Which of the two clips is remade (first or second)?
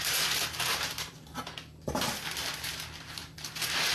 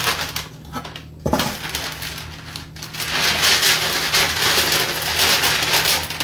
first